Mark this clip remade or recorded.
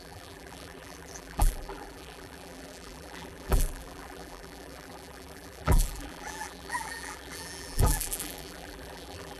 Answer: remade